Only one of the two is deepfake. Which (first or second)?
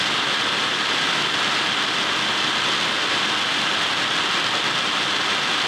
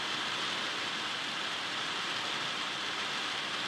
second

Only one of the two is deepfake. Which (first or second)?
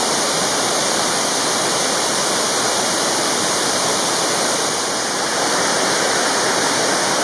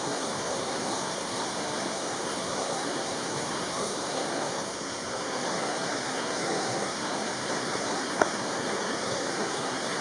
second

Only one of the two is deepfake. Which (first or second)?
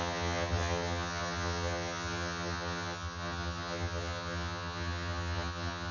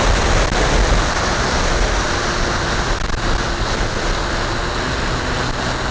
first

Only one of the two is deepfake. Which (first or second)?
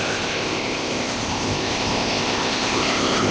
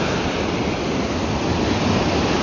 first